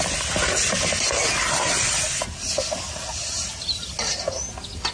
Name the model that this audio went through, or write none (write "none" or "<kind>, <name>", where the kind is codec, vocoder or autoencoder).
none